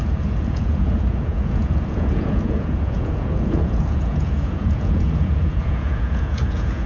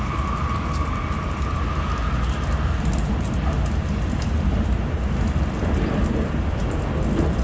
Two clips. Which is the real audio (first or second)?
second